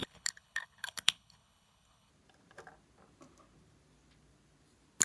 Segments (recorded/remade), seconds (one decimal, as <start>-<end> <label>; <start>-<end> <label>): 0.0-2.1 remade; 2.1-5.0 recorded